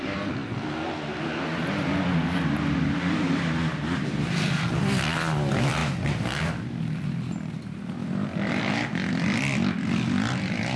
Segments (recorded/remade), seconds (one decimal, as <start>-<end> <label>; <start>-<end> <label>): 0.0-0.4 remade; 0.4-3.0 recorded; 3.0-5.8 remade; 5.8-9.1 recorded; 9.1-10.8 remade